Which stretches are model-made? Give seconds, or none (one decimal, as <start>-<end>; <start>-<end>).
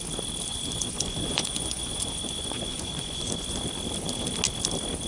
0.5-3.6